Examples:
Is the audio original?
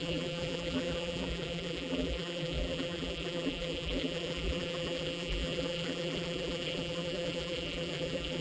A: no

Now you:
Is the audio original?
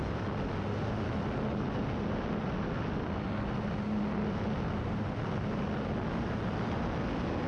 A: yes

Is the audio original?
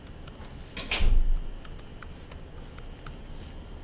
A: yes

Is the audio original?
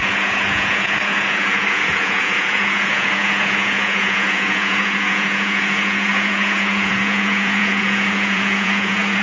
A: no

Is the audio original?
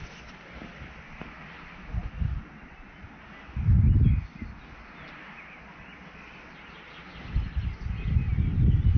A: yes